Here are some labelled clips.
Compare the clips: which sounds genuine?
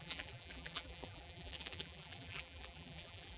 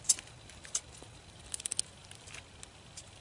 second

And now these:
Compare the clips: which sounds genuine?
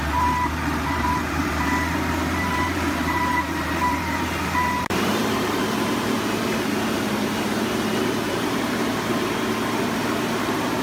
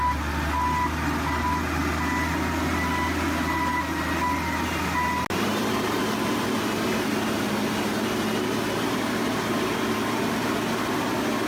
second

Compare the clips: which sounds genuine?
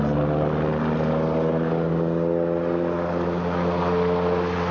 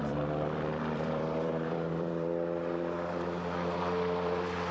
first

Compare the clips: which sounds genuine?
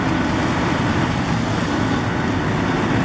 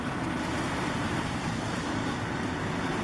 first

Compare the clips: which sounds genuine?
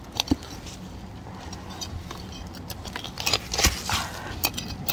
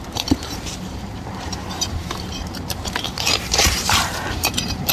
first